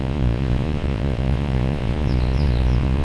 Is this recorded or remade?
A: remade